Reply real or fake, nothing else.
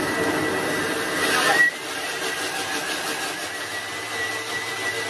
real